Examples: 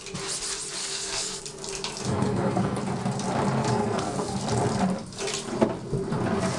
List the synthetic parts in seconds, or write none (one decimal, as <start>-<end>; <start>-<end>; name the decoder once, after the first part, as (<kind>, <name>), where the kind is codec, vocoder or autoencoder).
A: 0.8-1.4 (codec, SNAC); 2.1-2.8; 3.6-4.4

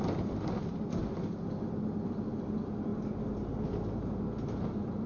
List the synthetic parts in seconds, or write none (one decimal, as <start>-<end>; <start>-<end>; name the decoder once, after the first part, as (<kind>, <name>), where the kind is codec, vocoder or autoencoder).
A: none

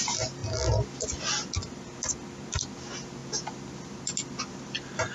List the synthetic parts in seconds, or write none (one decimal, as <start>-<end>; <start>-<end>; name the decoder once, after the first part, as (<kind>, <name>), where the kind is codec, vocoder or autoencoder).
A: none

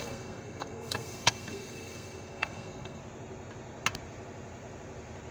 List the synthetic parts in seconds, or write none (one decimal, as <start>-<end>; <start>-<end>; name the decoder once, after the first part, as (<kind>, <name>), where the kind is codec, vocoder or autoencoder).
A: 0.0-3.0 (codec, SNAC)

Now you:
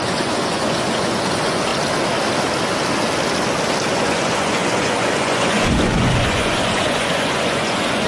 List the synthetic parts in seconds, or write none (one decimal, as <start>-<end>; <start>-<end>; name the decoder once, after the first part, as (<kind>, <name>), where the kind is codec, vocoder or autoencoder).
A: 0.0-1.7 (vocoder, Vocos); 3.9-8.1

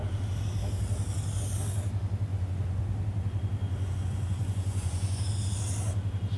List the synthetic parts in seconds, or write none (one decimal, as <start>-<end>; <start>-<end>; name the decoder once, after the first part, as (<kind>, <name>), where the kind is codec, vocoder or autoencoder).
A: 2.3-2.8 (vocoder, Vocos); 3.6-5.2